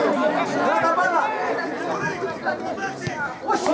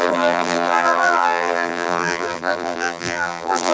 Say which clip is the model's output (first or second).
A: second